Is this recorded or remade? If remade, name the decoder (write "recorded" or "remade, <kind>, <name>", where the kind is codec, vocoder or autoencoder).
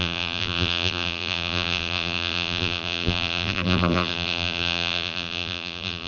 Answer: remade, vocoder, BigVGAN v2